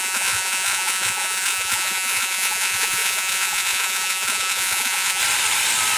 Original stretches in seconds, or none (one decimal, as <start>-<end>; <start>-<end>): 5.2-6.0